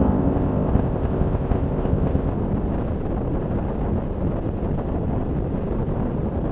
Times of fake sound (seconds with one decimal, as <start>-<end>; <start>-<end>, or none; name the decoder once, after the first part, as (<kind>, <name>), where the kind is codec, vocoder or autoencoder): 0.0-2.3 (codec, ZipCodec)